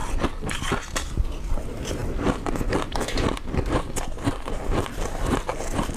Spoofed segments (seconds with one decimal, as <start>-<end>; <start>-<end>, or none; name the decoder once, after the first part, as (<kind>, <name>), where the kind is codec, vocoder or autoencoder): 0.0-0.5 (vocoder, BigVGAN v2); 2.0-5.6

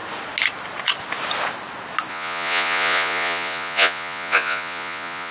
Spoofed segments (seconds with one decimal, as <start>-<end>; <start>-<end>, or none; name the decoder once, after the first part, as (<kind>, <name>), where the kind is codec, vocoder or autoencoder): 2.1-5.3 (vocoder, Vocos)

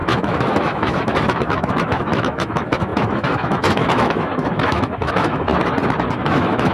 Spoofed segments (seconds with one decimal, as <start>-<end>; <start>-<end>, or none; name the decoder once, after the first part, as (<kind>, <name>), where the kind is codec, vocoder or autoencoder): 0.0-5.5 (autoencoder, DAC-VAE); 6.1-6.7

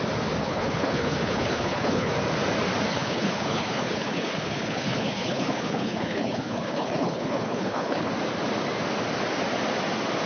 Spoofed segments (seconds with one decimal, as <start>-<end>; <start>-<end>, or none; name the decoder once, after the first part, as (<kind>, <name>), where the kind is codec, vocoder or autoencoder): 0.4-2.1 (codec, HILCodec); 2.9-8.1